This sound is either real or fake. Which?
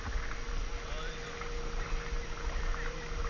real